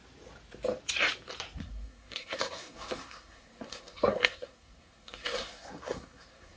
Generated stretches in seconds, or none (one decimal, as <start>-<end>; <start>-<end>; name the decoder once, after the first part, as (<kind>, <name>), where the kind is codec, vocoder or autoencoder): 1.6-6.6 (codec, SNAC)